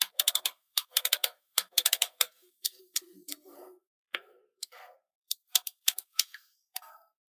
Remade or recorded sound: remade